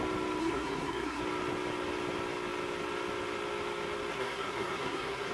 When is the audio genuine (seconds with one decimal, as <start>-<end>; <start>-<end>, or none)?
0.0-0.4; 1.2-4.1

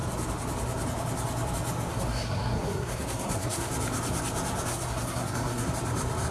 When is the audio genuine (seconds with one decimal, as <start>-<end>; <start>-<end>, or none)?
0.0-1.9; 3.7-4.7; 5.7-6.3